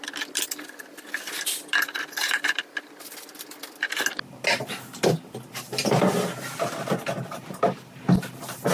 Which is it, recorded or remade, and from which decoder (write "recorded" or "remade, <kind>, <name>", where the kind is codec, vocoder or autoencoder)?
recorded